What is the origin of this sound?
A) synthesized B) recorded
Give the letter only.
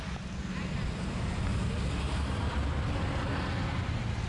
B